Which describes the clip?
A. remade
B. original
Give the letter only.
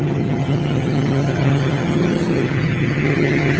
A